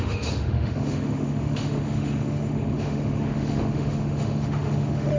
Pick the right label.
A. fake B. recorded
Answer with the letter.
A